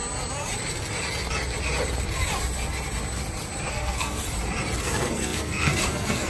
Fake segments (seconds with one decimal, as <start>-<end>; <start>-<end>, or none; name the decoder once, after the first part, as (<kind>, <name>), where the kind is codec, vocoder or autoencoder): 3.7-4.2 (codec, SNAC); 4.8-6.3